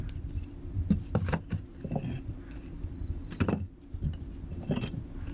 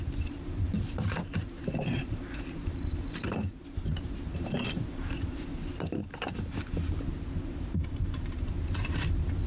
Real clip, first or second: first